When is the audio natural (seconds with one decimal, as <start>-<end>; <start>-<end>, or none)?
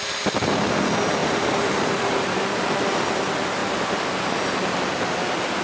0.0-1.2; 2.6-5.6